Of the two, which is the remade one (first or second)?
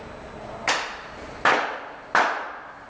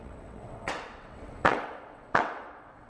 second